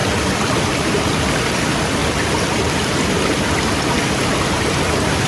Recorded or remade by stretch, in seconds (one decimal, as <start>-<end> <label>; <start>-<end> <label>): 0.0-5.3 recorded